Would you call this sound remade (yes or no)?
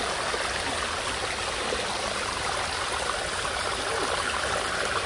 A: no